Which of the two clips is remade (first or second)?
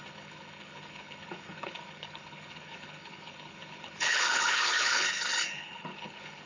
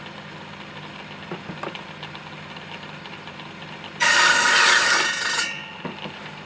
first